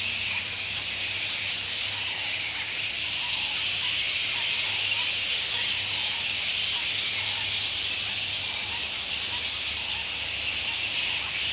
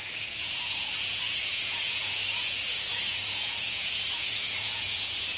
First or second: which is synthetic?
second